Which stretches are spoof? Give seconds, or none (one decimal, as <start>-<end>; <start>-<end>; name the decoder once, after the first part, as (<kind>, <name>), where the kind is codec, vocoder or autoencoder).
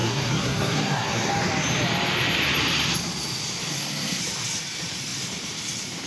0.0-1.3 (codec, SNAC); 3.7-4.2